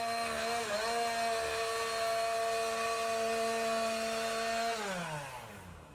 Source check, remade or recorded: recorded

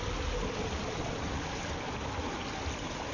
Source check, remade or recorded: recorded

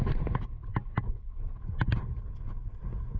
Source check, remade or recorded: recorded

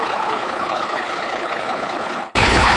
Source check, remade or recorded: remade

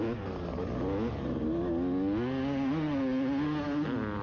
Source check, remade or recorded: recorded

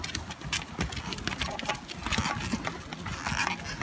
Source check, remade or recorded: recorded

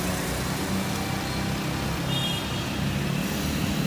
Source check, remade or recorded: recorded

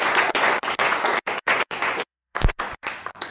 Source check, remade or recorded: remade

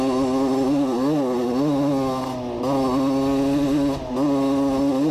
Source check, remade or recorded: recorded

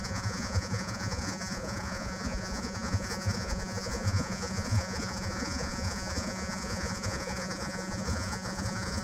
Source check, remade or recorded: remade